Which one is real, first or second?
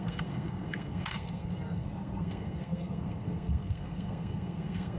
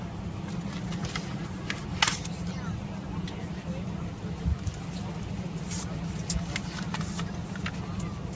second